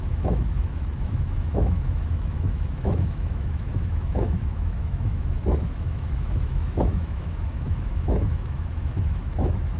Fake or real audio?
fake